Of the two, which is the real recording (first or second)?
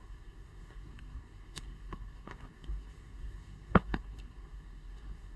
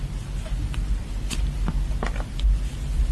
second